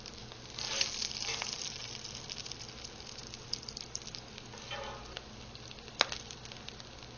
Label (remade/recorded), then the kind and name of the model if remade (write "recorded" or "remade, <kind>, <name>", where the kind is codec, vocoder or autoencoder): recorded